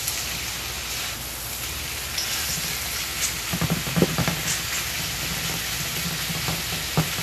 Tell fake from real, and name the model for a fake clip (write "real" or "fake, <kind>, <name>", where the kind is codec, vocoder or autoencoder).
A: real